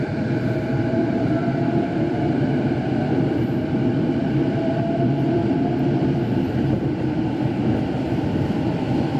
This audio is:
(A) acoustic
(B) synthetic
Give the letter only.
B